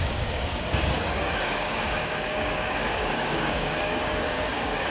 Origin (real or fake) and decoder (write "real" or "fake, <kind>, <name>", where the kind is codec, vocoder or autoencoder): fake, codec, DAC